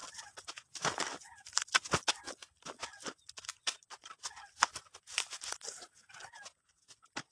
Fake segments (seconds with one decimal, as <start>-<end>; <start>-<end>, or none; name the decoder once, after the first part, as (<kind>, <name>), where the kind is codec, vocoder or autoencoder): 0.0-1.7 (vocoder, BigVGAN v2); 2.9-4.3